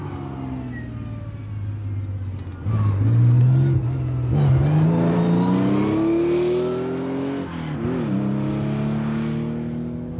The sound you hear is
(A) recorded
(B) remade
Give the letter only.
A